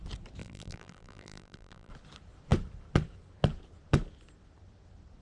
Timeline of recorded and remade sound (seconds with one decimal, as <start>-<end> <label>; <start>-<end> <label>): 0.0-0.4 recorded; 0.4-1.9 remade; 1.9-5.2 recorded